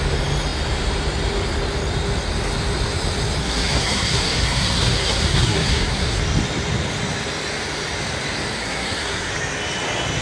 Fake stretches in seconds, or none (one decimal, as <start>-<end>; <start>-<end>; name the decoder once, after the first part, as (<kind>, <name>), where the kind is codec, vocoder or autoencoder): 3.4-6.2 (codec, SNAC); 8.6-9.3